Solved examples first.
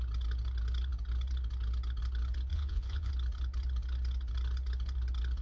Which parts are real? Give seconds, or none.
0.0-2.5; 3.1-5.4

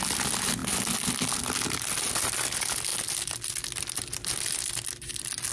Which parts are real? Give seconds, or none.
0.0-5.5